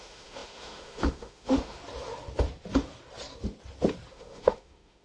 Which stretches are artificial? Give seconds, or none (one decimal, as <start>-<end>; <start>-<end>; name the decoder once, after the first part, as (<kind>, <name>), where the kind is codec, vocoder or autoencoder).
0.0-1.8 (autoencoder, DAC-VAE); 4.1-5.0